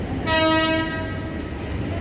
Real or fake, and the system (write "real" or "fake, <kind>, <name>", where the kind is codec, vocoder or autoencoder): real